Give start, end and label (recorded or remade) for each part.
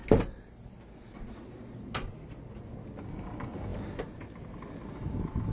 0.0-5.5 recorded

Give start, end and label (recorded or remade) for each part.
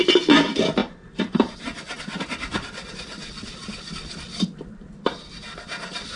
0.0-0.8 recorded; 0.8-2.9 remade; 2.9-6.2 recorded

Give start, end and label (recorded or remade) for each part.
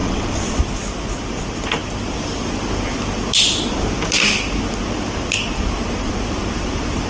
0.0-0.6 remade; 0.6-7.1 recorded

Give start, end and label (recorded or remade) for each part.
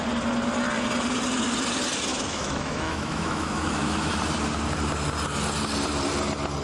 0.0-2.1 recorded; 2.1-4.1 remade; 4.1-6.6 recorded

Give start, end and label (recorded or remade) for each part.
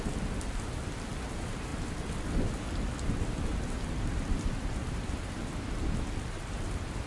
0.0-1.7 remade; 1.7-2.8 recorded; 2.8-7.1 remade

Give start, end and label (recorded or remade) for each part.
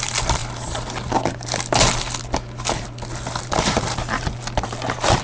0.0-5.2 recorded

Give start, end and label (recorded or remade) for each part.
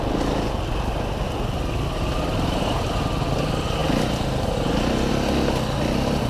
0.0-6.3 recorded